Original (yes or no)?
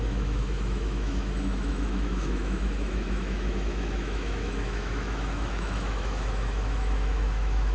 no